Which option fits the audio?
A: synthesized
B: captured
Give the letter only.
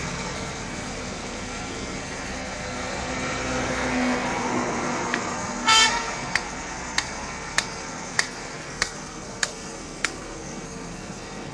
A